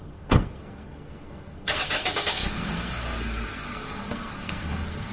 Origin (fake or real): fake